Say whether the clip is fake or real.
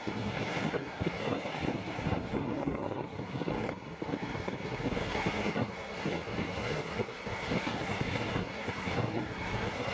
fake